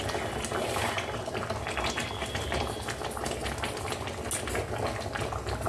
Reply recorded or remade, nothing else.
recorded